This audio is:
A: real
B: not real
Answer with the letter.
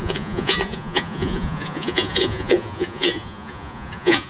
B